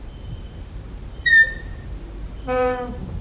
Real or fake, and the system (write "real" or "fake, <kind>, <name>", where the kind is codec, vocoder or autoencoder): fake, vocoder, BigVGAN v2